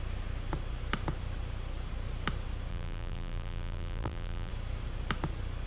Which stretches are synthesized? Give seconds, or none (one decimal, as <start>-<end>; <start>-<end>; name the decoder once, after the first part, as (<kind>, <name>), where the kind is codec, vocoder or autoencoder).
2.7-4.5 (vocoder, BigVGAN v2)